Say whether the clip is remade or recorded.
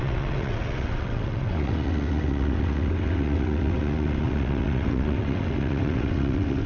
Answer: remade